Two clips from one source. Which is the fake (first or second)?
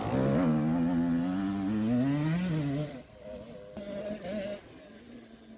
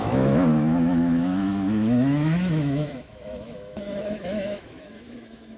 second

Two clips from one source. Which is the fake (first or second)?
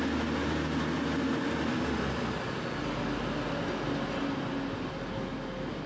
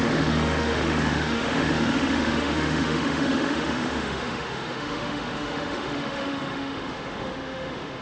second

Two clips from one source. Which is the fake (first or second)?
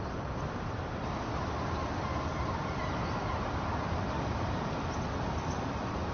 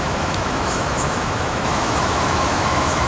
second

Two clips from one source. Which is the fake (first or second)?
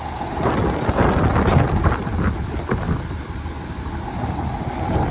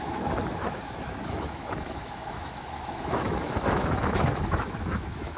second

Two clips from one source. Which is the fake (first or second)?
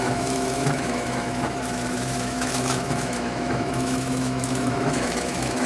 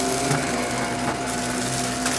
first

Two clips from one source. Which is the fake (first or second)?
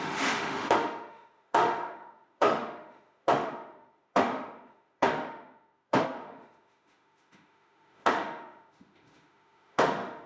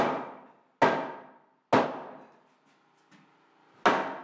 first